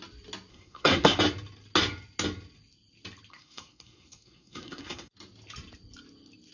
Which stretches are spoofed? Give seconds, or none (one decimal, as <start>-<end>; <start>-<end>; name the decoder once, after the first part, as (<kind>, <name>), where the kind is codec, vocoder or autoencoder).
0.5-1.2 (codec, SNAC); 3.3-5.1